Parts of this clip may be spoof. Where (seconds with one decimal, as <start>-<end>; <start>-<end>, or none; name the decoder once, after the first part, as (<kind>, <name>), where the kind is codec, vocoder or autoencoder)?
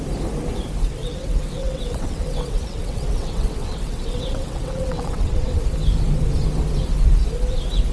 1.0-5.6 (vocoder, WaveNeXt)